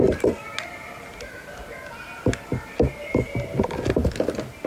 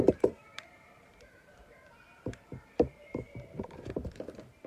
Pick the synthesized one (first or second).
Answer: second